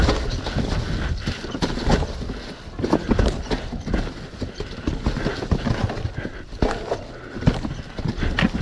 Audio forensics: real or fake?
real